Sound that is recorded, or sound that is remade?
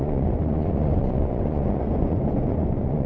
remade